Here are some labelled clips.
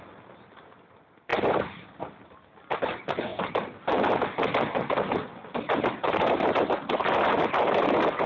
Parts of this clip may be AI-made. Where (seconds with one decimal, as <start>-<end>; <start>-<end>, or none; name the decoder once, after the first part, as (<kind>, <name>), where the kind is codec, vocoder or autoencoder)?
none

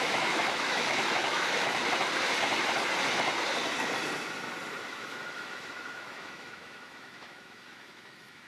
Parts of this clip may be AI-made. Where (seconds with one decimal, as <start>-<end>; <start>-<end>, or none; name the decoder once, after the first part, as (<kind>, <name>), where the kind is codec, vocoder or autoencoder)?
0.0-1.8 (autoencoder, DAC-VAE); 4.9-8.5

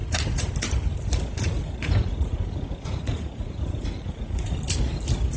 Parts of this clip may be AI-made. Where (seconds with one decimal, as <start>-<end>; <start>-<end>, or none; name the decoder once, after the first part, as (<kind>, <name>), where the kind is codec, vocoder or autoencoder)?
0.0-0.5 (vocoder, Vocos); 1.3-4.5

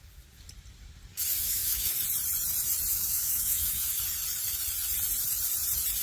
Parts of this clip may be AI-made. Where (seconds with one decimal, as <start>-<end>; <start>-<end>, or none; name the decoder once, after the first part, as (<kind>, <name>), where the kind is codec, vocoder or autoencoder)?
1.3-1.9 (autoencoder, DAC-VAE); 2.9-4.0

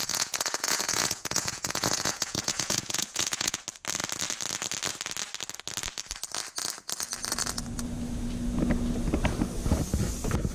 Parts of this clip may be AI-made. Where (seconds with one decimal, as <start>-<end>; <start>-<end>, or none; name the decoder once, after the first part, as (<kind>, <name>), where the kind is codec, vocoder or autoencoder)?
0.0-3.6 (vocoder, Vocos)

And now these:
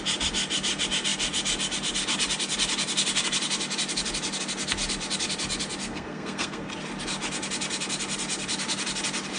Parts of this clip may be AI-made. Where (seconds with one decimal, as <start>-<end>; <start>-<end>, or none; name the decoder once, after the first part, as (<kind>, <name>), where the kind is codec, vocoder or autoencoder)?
5.8-6.7 (codec, SNAC)